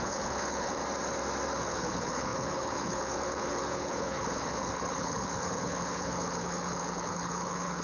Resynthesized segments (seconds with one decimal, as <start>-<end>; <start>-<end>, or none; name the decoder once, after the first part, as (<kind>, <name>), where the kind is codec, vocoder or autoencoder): 0.0-0.8 (codec, HILCodec); 1.6-7.8